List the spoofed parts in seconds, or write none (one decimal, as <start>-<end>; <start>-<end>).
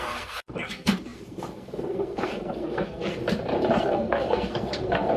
0.0-3.2; 3.8-5.2